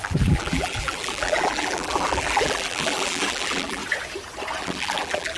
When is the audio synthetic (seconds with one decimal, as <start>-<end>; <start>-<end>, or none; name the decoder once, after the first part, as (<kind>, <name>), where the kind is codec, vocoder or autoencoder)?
0.0-3.8 (vocoder, BigVGAN v2); 4.6-5.4